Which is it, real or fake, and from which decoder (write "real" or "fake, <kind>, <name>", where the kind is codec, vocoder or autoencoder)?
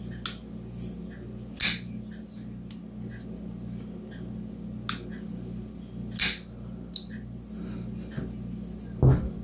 real